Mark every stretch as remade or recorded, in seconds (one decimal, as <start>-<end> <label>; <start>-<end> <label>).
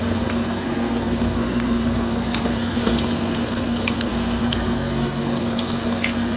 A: 0.0-6.4 remade